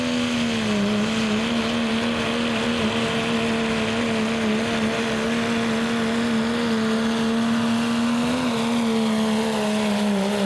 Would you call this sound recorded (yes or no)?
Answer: yes